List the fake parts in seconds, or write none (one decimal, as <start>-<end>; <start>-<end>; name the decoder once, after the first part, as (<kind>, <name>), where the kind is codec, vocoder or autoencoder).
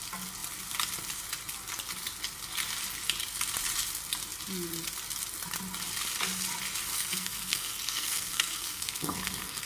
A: 6.9-9.7 (codec, SNAC)